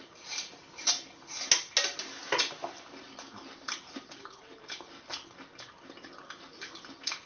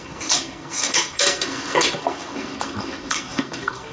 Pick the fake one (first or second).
second